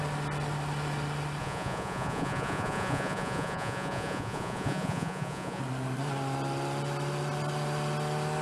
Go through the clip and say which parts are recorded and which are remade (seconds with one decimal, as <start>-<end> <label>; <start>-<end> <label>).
0.0-1.4 recorded; 1.4-5.6 remade; 5.6-8.4 recorded